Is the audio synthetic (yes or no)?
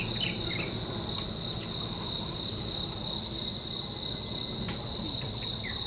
no